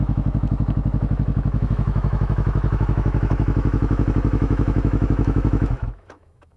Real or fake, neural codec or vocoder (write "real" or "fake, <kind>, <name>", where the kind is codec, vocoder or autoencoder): fake, autoencoder, DAC-VAE